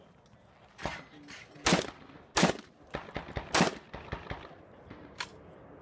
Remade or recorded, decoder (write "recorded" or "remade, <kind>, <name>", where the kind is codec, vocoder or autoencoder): recorded